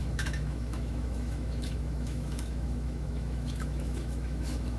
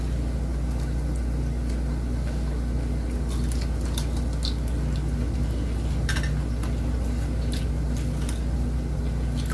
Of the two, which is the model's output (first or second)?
first